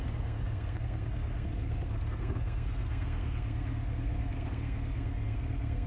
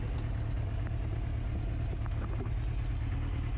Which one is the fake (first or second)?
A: first